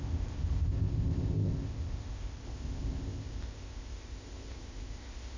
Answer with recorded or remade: remade